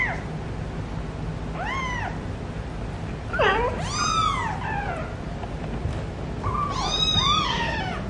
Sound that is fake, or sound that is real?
real